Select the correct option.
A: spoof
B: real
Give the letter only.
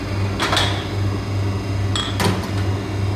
B